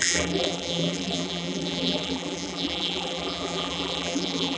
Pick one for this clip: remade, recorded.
remade